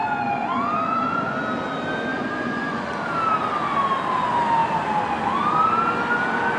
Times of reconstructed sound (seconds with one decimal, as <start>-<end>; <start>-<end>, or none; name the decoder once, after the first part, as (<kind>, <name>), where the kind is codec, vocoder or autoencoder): 0.0-1.4 (vocoder, Vocos); 2.1-3.0